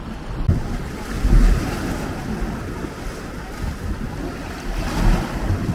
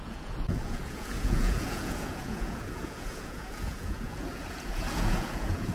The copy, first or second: second